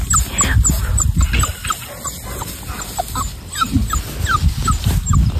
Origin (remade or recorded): recorded